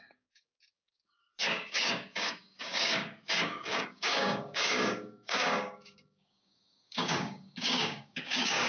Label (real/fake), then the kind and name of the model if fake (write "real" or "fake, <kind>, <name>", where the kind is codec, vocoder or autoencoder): fake, codec, DAC